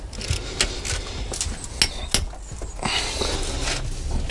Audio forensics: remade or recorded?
recorded